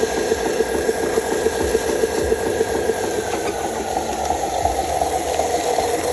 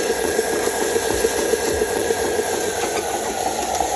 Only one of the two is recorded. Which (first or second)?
first